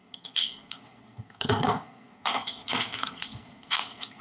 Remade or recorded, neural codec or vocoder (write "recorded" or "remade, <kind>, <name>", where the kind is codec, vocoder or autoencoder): remade, codec, SNAC